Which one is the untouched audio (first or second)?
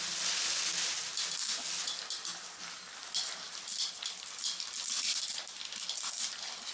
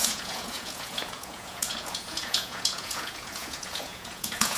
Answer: first